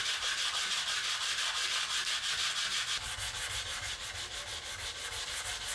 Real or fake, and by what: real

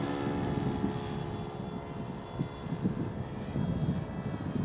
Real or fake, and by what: real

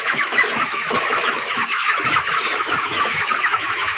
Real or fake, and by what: fake, autoencoder, DAC-VAE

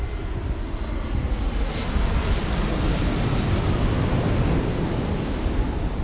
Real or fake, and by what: real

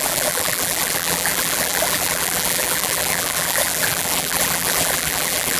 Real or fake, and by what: fake, vocoder, BigVGAN v2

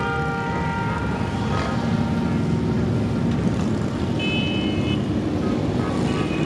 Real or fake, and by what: real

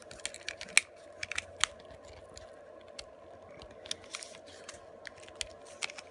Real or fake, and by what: real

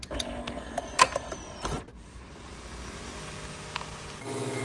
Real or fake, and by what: real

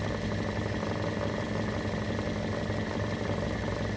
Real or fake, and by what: real